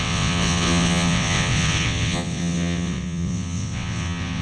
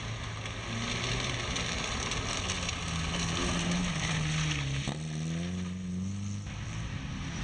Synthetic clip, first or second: first